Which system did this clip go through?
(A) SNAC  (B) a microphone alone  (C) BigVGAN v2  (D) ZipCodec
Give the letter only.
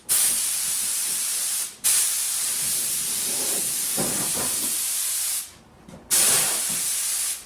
C